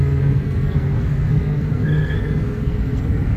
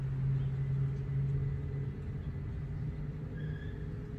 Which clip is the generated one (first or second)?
first